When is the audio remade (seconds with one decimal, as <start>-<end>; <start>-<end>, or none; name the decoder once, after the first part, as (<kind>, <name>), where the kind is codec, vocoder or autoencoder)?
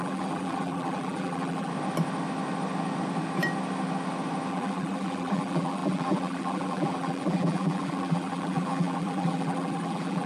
0.0-1.7 (vocoder, BigVGAN v2); 4.5-10.3